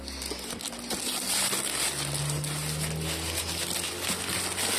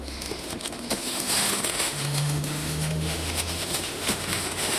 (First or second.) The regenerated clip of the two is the second